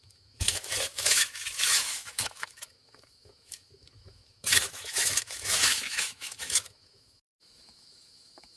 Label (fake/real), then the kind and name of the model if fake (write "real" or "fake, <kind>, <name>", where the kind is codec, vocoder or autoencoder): fake, autoencoder, DAC-VAE